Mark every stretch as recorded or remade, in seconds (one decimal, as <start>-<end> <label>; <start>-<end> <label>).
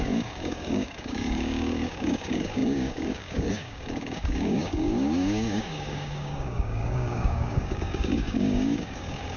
0.0-9.4 remade